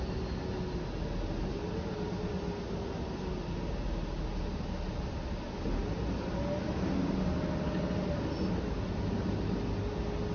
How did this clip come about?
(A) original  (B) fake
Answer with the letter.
A